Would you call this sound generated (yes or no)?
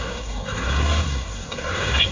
yes